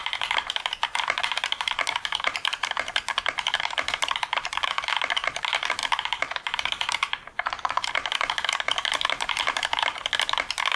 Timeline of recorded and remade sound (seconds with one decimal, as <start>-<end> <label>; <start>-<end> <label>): 0.0-10.0 remade; 10.0-10.8 recorded